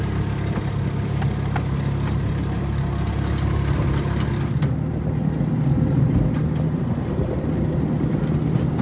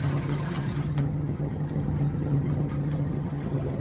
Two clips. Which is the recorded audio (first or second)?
first